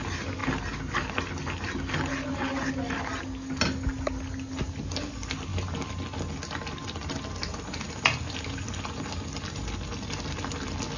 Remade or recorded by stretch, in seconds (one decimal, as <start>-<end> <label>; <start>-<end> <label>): 0.0-11.0 recorded

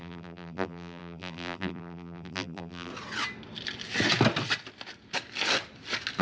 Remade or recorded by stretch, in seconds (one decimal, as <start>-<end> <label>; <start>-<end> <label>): 0.0-2.9 remade; 2.9-6.2 recorded

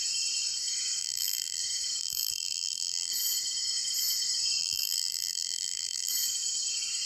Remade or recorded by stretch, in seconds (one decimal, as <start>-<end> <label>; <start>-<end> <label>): 0.0-1.0 recorded; 1.0-1.6 remade; 1.6-2.0 recorded; 2.0-3.1 remade; 3.1-4.6 recorded; 4.6-6.1 remade; 6.1-7.1 recorded

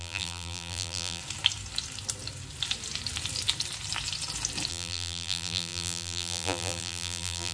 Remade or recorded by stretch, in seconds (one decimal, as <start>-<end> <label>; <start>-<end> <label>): 0.0-1.2 remade; 1.2-4.7 recorded; 4.7-7.5 remade

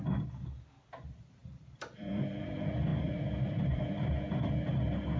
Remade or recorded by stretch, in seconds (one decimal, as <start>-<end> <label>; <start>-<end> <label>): 0.0-1.4 recorded; 1.4-2.4 remade; 2.4-2.9 recorded; 2.9-3.9 remade; 3.9-5.2 recorded